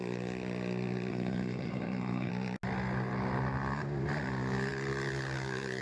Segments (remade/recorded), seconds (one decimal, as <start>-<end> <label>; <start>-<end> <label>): 0.0-1.1 recorded; 1.1-2.3 remade; 2.3-5.8 recorded